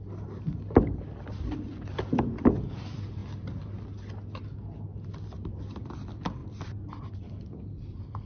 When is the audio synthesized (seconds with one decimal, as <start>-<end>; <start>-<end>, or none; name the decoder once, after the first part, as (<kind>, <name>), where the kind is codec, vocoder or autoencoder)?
0.0-3.2 (vocoder, BigVGAN v2); 5.4-8.3